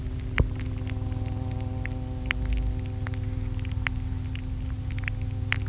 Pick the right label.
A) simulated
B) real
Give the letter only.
B